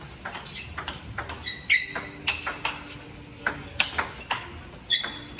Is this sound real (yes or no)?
yes